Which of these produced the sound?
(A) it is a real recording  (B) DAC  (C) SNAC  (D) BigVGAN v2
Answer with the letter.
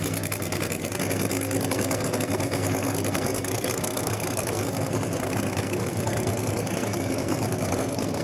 C